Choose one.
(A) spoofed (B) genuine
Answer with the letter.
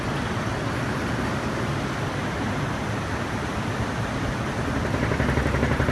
B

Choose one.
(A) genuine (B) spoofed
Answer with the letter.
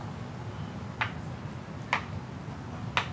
A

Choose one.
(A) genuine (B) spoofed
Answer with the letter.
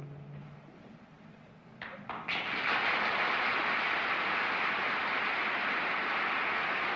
A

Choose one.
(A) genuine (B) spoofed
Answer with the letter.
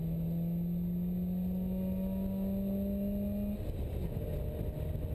A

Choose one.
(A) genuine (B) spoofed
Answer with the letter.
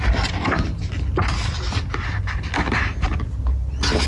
A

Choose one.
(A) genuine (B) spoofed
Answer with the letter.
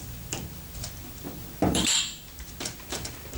B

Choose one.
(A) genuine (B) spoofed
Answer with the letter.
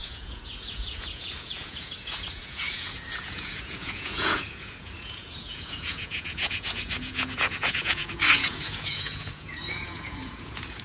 B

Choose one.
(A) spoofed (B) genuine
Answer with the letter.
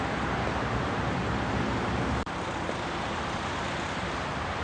A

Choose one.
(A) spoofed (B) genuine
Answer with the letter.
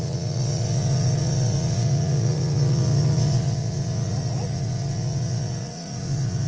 A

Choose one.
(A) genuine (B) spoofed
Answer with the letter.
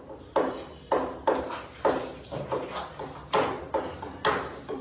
A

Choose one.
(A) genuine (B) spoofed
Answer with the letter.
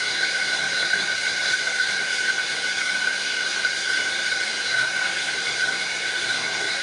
B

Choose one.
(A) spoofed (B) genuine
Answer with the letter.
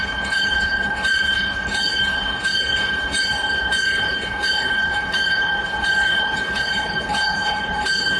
A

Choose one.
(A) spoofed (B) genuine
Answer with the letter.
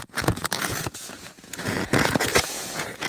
A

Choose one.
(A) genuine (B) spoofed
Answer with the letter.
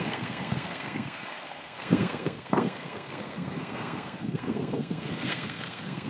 B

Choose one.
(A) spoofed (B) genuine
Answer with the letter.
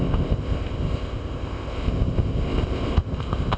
A